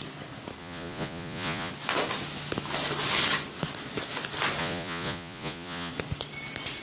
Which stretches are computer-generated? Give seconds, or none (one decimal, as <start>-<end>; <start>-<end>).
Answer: 0.6-1.7; 4.6-5.9